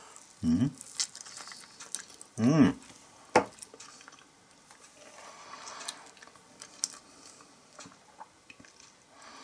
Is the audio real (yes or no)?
yes